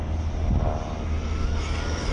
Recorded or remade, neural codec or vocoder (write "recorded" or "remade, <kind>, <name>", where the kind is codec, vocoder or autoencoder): recorded